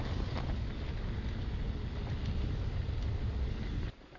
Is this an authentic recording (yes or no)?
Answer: yes